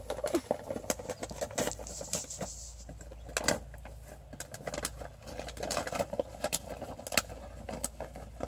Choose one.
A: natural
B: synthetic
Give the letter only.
A